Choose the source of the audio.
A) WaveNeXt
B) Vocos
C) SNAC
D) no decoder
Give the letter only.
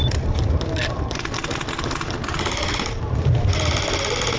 D